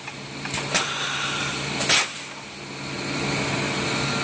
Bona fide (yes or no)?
yes